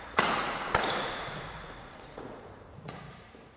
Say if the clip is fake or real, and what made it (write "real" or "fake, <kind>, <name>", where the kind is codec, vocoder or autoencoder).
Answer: fake, vocoder, Vocos